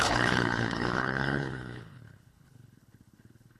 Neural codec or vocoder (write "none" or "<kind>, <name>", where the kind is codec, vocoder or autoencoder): codec, HILCodec